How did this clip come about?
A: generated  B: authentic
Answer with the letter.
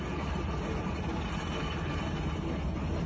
B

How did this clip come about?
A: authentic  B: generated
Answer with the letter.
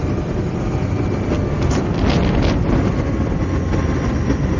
A